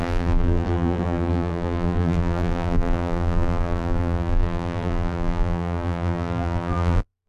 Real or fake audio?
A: fake